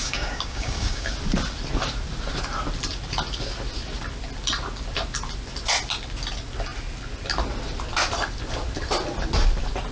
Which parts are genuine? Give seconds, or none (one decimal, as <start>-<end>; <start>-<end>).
1.1-9.9